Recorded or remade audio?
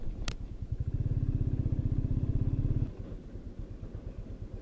recorded